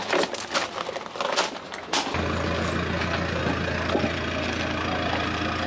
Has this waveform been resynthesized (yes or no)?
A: no